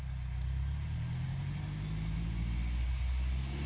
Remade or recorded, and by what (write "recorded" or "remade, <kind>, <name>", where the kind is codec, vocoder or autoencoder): recorded